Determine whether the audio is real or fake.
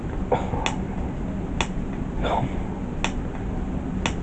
real